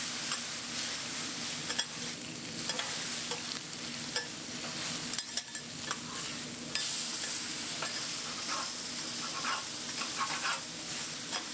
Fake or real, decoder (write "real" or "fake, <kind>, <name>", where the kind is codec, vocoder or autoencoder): real